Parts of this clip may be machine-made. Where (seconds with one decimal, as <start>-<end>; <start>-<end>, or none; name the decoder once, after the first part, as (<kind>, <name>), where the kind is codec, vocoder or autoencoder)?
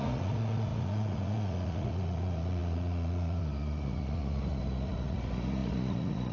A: 0.0-6.3 (vocoder, Vocos)